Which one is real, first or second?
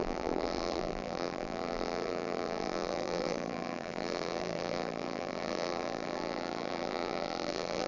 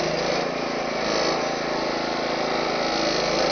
second